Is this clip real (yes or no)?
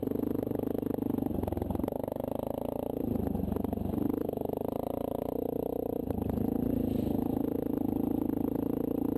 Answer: yes